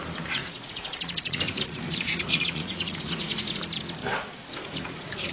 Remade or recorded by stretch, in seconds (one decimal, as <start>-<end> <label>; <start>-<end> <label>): 0.0-0.4 recorded; 0.4-3.6 remade; 3.6-4.0 recorded; 4.0-5.3 remade